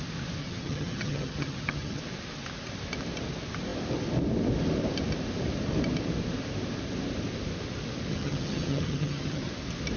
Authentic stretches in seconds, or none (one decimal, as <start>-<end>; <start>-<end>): 0.0-0.4; 2.0-8.1; 9.5-10.0

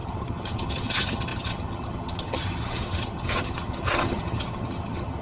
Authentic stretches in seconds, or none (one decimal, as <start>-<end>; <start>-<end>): none